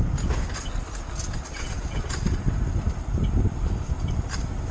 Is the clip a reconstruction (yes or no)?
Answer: no